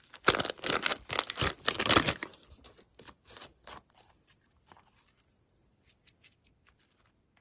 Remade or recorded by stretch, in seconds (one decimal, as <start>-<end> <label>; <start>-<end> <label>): 0.0-7.4 recorded